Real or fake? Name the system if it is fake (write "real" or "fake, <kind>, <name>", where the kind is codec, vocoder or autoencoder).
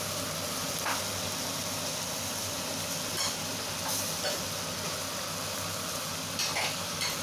real